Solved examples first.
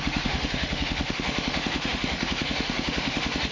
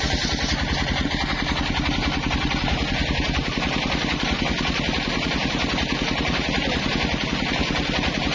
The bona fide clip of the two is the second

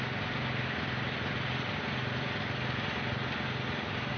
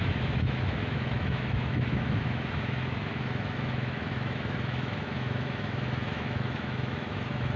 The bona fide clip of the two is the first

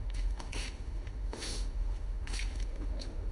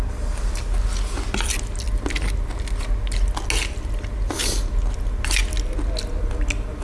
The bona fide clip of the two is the second